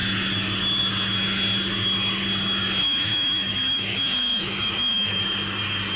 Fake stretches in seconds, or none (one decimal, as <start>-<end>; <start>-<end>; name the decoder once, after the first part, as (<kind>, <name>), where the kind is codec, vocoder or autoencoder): 2.8-5.2 (autoencoder, DAC-VAE)